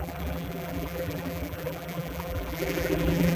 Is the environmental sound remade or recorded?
remade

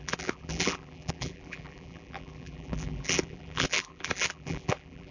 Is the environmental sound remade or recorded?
remade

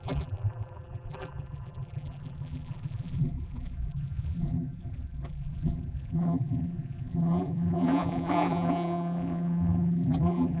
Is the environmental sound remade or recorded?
remade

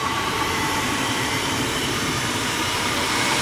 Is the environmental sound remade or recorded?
remade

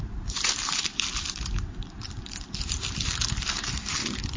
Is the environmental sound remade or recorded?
remade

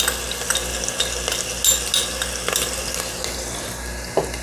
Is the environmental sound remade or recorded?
recorded